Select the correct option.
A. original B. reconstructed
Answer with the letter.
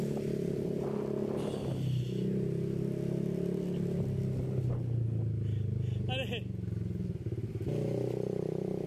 A